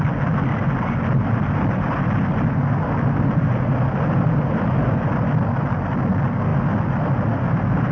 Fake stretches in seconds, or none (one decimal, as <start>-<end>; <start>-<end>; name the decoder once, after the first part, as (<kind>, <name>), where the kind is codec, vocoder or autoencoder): none